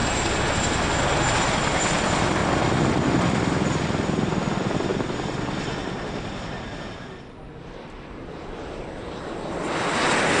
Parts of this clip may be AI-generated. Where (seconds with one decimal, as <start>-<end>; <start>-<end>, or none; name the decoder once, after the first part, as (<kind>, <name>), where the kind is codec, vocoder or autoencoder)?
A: 1.2-2.4 (vocoder, BigVGAN v2); 2.9-10.4